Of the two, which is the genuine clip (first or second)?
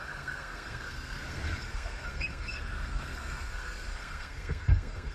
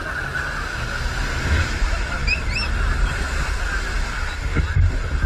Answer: second